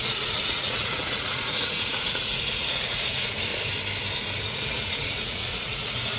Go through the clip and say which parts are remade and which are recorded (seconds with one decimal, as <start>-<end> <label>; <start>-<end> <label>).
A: 0.0-3.5 remade; 3.5-4.4 recorded; 4.4-6.2 remade